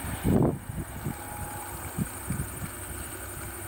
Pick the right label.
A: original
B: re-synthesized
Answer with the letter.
A